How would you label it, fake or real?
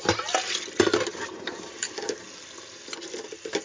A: real